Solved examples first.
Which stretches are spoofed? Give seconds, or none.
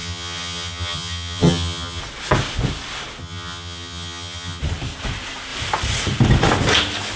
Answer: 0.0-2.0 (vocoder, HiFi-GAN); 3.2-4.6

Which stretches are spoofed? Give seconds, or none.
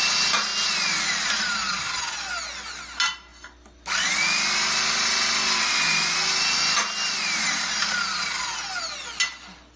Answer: none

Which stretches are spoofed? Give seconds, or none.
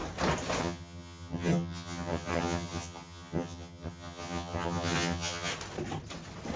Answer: 0.6-5.5 (vocoder, HiFi-GAN)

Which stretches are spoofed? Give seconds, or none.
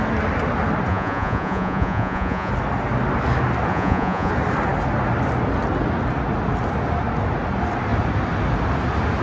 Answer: 0.9-2.5 (vocoder, Vocos); 3.7-4.3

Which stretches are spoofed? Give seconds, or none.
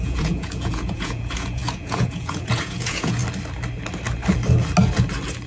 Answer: 0.0-3.2 (vocoder, Vocos)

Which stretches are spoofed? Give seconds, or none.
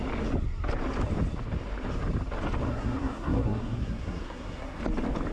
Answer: 2.7-4.8 (codec, SNAC)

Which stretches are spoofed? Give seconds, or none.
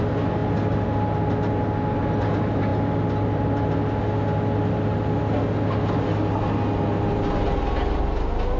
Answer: none